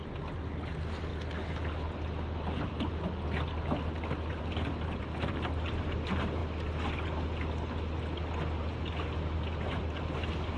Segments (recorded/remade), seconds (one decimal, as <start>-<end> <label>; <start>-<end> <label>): 0.0-10.6 recorded